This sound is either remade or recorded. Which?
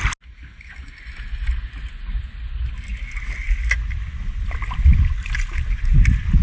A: recorded